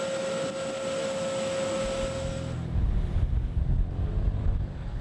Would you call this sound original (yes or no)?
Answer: yes